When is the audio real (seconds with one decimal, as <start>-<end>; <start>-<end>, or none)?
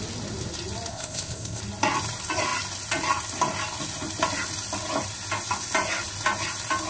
0.0-0.9; 1.6-6.9